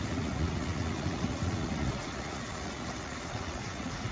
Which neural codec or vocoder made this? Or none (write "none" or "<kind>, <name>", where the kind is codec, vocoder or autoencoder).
vocoder, Vocos